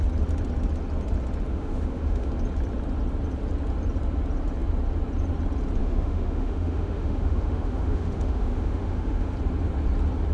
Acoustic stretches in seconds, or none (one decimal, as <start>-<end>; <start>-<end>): 0.0-1.5; 2.3-5.8; 9.3-10.3